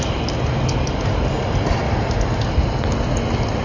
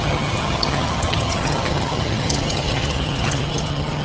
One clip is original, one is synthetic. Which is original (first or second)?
first